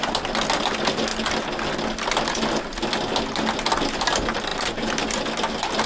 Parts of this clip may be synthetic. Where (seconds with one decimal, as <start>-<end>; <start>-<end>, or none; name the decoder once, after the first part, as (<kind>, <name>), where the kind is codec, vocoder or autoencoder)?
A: none